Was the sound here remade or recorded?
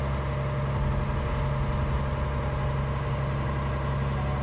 recorded